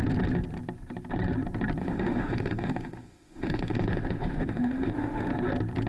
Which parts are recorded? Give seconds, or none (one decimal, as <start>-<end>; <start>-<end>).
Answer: 0.0-1.8; 5.3-5.9